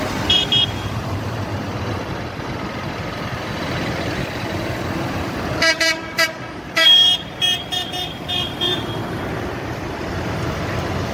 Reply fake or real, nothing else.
fake